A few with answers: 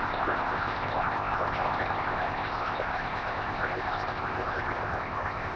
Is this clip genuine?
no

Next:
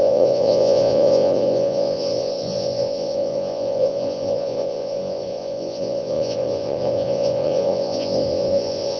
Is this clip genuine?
no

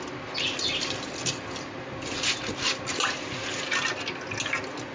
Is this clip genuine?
yes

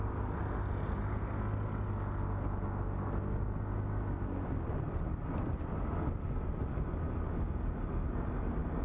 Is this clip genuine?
yes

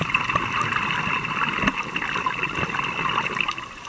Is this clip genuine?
yes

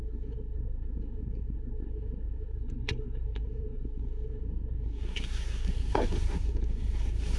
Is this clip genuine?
no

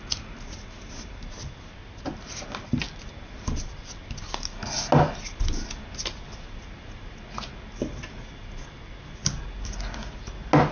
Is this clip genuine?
yes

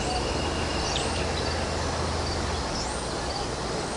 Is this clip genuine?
yes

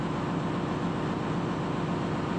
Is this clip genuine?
yes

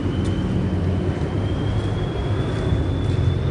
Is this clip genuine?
yes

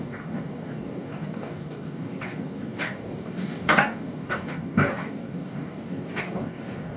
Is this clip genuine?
no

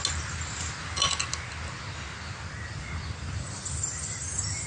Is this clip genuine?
yes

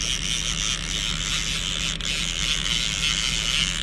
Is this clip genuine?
yes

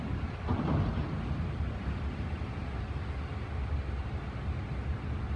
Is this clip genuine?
yes